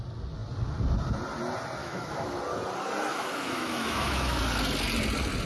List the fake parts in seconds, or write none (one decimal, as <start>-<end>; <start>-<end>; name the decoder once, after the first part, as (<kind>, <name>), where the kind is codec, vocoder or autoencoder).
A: 1.8-2.4 (autoencoder, DAC-VAE); 3.1-4.4